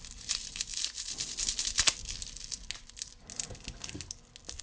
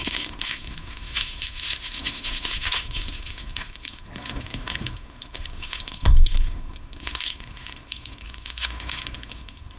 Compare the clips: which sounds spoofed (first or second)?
second